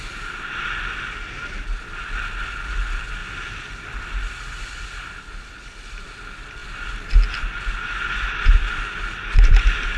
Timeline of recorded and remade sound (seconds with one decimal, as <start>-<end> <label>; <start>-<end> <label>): 0.0-10.0 recorded